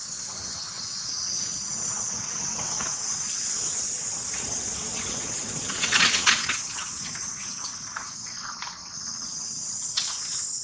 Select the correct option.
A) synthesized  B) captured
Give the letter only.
A